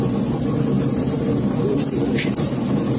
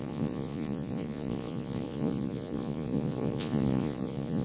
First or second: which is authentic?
first